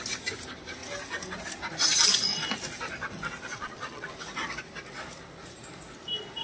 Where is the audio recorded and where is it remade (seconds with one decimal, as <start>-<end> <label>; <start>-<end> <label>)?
0.0-3.5 recorded; 3.5-4.1 remade; 4.1-6.4 recorded